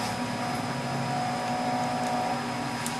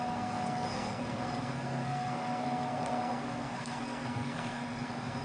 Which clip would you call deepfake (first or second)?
second